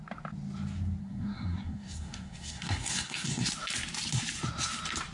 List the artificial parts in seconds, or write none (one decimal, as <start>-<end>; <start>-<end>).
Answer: 1.0-3.5